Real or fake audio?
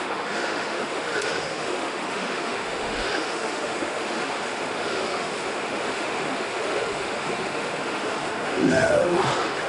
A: fake